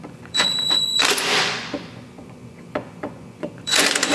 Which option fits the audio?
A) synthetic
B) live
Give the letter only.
A